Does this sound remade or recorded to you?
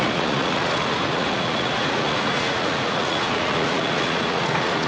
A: remade